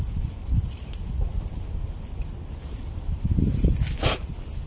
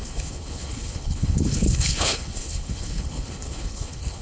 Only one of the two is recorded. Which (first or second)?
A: first